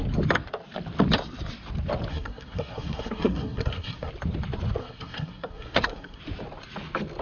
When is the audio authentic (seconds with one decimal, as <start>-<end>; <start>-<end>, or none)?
0.0-2.1; 4.1-4.8; 6.2-7.2